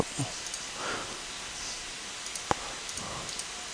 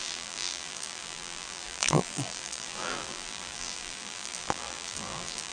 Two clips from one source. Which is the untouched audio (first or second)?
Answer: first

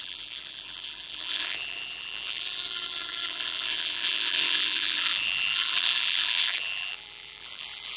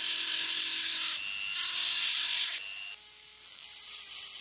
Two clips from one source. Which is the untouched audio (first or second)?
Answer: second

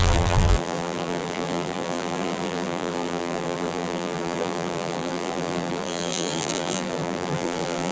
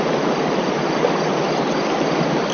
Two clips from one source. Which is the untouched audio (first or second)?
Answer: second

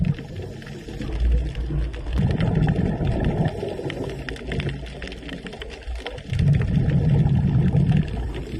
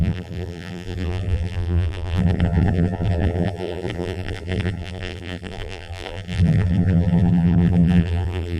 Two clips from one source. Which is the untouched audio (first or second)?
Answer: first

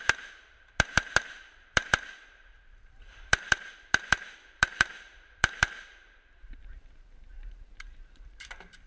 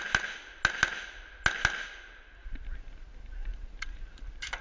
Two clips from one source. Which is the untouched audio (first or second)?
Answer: second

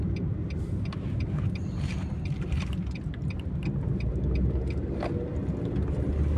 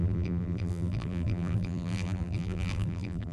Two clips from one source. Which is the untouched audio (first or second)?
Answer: first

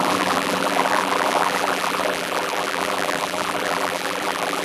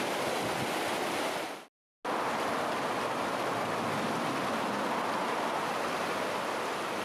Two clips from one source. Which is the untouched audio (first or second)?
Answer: second